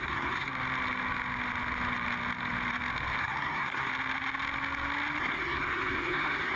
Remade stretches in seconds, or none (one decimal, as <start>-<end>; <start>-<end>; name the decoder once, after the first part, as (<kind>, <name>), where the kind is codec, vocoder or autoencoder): 0.0-0.5 (codec, SNAC); 3.2-3.9; 5.2-6.6